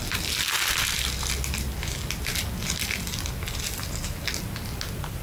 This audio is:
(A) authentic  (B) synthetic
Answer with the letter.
A